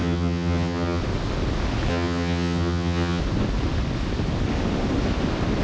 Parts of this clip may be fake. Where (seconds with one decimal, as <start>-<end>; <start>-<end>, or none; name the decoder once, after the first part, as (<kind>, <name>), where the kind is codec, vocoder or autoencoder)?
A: 0.0-1.0 (vocoder, HiFi-GAN); 1.9-3.2